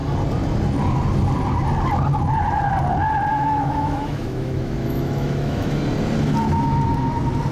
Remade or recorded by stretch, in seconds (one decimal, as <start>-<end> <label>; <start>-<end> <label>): 0.0-3.3 recorded; 3.3-5.8 remade; 5.8-7.5 recorded